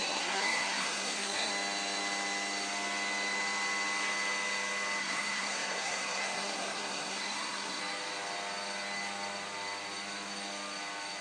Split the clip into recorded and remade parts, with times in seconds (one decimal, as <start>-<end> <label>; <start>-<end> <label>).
0.0-1.5 remade; 1.5-5.0 recorded; 5.0-7.8 remade; 7.8-11.2 recorded